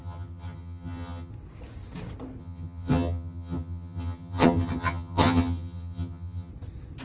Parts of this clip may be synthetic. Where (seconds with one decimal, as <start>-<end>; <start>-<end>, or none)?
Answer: 0.0-1.3; 2.4-6.5